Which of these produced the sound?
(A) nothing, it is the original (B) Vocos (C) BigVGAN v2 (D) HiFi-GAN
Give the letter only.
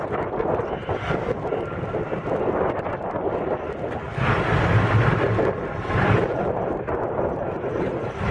A